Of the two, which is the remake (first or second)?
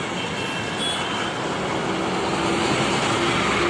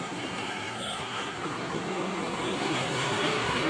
second